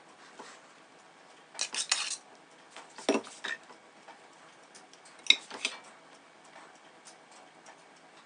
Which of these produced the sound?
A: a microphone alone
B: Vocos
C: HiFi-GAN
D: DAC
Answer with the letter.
A